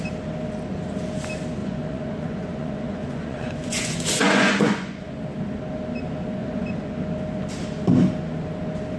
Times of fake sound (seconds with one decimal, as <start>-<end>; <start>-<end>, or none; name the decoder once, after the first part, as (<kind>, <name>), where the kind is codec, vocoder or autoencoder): 1.6-5.2 (vocoder, Vocos); 6.4-6.9

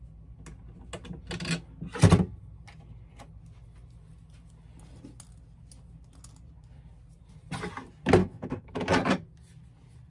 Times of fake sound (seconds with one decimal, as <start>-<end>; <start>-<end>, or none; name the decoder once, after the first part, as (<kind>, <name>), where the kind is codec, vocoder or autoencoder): 8.2-8.7 (codec, SNAC)

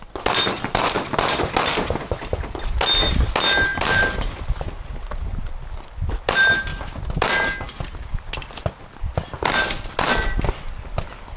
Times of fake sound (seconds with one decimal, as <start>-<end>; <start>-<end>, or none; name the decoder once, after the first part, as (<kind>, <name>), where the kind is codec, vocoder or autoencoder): 3.7-4.7 (vocoder, BigVGAN v2)

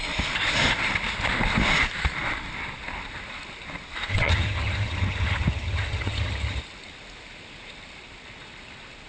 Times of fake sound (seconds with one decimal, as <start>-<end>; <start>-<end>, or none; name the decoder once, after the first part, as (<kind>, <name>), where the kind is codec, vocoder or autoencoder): 4.1-6.6 (vocoder, HiFi-GAN)

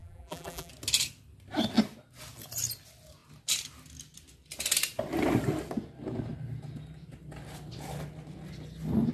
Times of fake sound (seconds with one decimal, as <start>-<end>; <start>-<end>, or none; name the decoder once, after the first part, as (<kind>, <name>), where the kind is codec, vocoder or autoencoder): 0.0-0.7 (vocoder, BigVGAN v2)

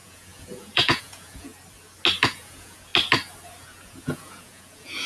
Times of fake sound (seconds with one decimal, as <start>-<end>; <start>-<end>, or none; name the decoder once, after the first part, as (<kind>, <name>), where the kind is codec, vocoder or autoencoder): 0.0-1.5 (vocoder, Vocos); 2.3-2.9; 3.6-5.1